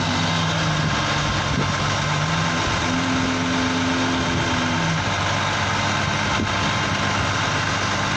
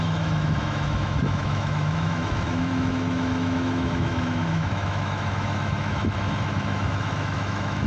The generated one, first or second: second